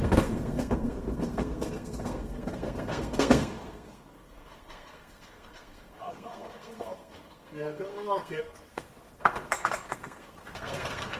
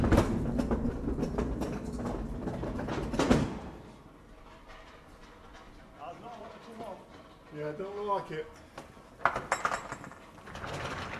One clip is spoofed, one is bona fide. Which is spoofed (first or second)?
first